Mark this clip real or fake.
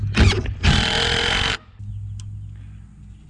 real